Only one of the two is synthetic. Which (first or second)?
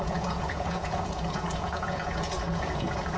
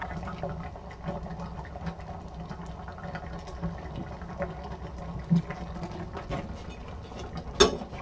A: first